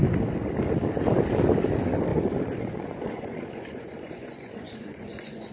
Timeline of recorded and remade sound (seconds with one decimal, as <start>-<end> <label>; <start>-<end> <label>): 0.0-2.1 recorded; 2.1-5.5 remade